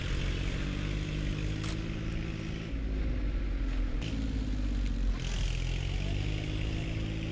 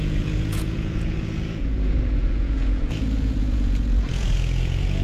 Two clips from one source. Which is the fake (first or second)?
second